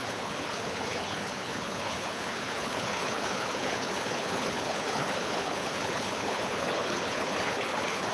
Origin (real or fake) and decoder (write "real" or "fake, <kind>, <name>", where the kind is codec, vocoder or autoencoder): fake, codec, HILCodec